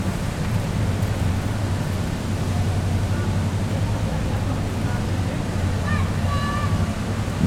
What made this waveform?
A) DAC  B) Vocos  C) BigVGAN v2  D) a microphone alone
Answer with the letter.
D